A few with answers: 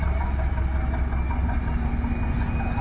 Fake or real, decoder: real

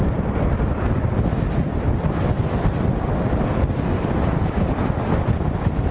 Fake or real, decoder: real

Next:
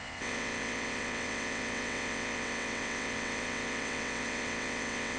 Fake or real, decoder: fake, vocoder, WaveNeXt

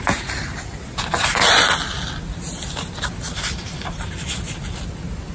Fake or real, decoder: real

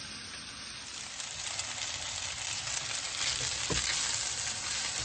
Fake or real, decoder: real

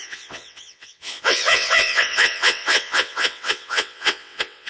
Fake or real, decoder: fake, vocoder, WaveNeXt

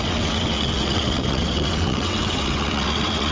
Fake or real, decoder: fake, vocoder, WaveNeXt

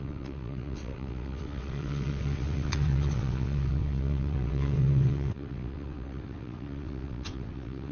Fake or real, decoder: fake, vocoder, WaveNeXt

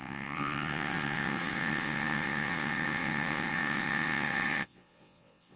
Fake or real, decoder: fake, vocoder, WaveNeXt